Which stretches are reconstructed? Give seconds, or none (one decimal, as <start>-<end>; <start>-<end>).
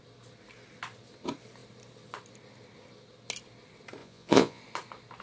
4.0-4.6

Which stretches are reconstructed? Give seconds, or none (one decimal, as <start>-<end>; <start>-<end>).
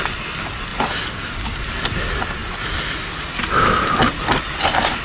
none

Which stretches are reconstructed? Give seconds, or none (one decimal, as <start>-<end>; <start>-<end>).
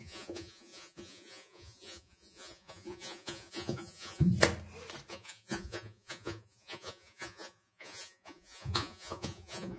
0.0-4.3; 5.1-9.8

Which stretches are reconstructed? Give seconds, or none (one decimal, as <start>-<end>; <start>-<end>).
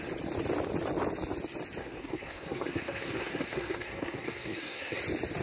1.8-5.0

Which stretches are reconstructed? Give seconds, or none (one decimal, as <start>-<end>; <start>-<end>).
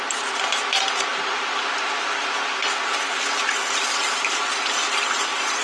1.1-3.4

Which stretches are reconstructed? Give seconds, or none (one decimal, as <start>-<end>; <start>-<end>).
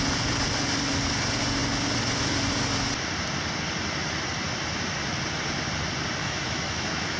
6.2-7.2